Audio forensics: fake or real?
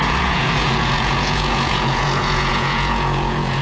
fake